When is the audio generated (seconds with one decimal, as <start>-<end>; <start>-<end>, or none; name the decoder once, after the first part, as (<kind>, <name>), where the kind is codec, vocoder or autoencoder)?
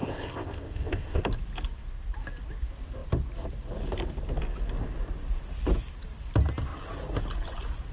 0.0-1.2 (codec, ZipCodec)